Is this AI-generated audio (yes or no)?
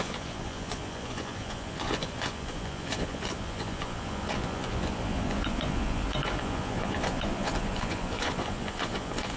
yes